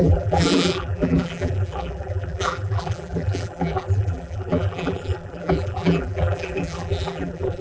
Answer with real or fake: fake